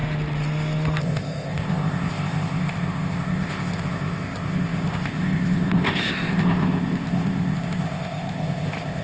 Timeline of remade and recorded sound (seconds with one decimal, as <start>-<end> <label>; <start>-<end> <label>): 0.0-1.0 recorded; 1.0-9.0 remade